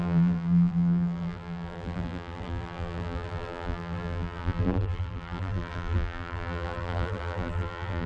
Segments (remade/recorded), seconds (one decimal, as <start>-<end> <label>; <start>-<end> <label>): 0.0-8.1 remade